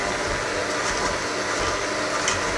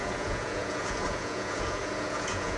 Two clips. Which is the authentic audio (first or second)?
first